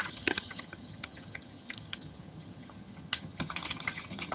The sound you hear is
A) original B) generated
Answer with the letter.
B